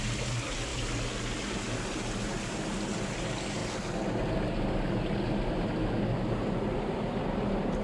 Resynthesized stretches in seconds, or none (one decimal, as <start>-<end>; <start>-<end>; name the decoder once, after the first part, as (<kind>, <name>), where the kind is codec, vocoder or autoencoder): none